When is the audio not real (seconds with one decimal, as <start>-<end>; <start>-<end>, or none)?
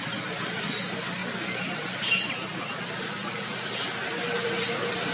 none